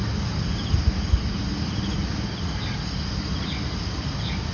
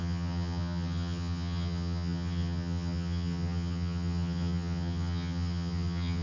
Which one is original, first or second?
first